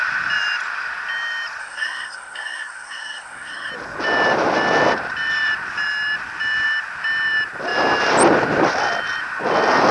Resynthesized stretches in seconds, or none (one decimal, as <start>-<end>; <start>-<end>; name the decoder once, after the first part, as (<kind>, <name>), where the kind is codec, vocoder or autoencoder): 1.6-3.7 (codec, SNAC)